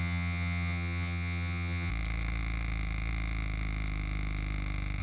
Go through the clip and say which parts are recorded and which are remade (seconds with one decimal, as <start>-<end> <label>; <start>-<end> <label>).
0.0-1.9 remade; 1.9-5.0 recorded